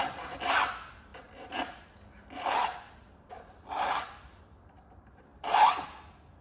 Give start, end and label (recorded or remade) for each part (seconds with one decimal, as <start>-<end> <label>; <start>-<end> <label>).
0.0-6.4 recorded